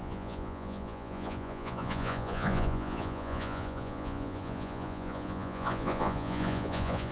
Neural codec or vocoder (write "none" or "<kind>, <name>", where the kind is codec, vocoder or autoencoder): vocoder, Vocos